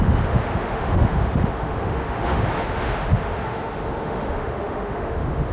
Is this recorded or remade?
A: remade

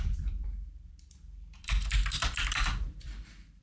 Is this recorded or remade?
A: remade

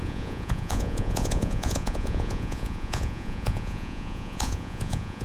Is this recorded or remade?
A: remade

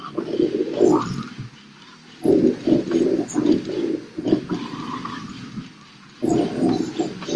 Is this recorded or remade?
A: remade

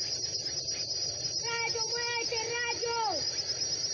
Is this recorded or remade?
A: recorded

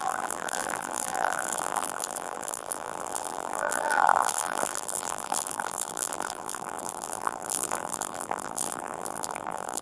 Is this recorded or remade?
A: remade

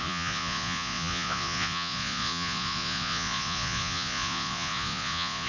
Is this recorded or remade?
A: remade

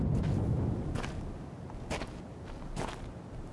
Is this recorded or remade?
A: recorded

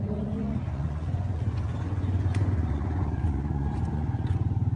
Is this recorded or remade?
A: remade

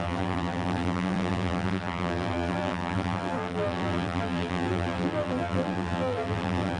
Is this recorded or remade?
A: remade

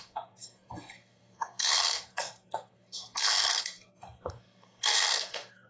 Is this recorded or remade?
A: remade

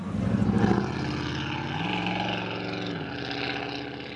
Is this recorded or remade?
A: recorded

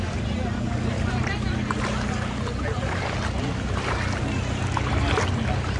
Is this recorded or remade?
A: recorded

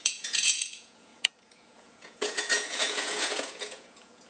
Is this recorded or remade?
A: remade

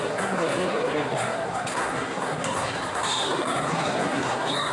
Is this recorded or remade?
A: remade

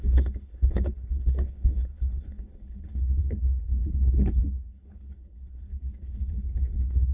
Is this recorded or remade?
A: remade